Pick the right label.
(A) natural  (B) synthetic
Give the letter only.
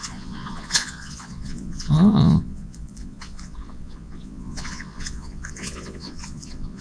B